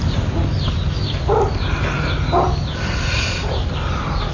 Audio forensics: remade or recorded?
recorded